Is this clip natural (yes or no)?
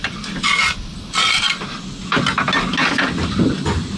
yes